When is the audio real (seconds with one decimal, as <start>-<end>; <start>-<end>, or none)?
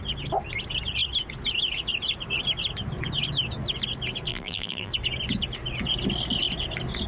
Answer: 0.0-4.3; 4.9-7.1